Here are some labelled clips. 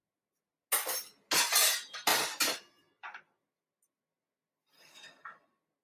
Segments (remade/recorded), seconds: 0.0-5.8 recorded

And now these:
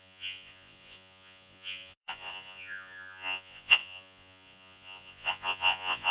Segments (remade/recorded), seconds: 0.0-6.1 remade